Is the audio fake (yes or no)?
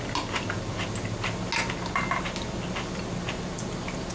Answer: no